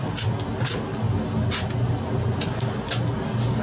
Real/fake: real